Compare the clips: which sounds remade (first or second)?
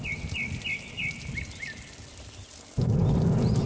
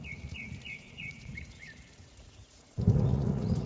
second